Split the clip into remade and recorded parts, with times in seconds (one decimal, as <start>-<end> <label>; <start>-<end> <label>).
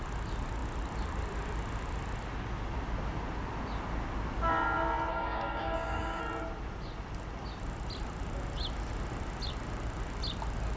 0.0-5.1 recorded; 5.1-6.2 remade; 6.2-10.8 recorded